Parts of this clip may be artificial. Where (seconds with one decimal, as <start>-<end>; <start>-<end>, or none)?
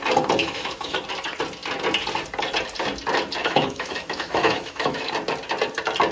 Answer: 0.4-1.0; 3.4-5.1